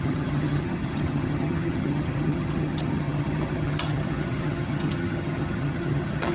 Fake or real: fake